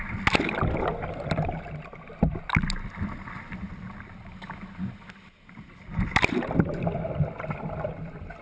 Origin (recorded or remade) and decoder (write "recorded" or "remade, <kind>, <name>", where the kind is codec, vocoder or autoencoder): recorded